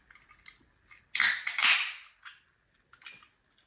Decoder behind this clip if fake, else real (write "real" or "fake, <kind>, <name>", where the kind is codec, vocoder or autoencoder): real